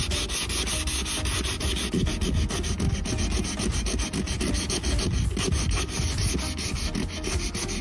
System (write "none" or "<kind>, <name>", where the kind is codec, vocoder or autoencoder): none